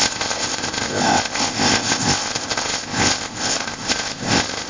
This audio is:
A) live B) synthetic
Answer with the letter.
B